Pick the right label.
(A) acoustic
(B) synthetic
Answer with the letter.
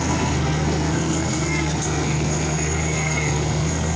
B